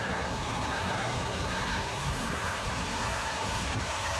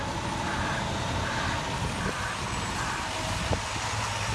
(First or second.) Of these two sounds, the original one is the second